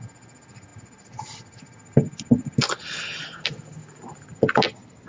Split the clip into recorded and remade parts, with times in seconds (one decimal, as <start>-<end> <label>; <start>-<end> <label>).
0.0-5.1 recorded

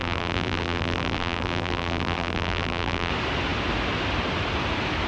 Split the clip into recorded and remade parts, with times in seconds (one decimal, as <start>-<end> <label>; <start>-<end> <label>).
0.0-3.1 remade; 3.1-5.1 recorded

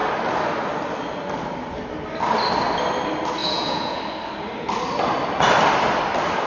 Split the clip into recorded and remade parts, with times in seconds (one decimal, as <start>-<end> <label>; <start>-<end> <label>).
0.0-3.4 recorded; 3.4-4.0 remade; 4.0-6.5 recorded

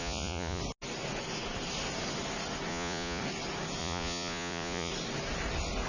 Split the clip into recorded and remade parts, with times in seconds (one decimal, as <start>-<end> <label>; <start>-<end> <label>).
0.0-0.6 remade; 0.6-2.7 recorded; 2.7-3.2 remade; 3.2-3.8 recorded; 3.8-4.9 remade; 4.9-5.9 recorded

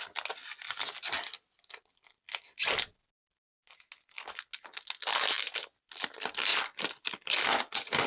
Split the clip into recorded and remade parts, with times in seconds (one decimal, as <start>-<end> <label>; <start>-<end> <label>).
0.0-8.1 recorded